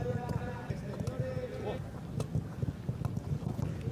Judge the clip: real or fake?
real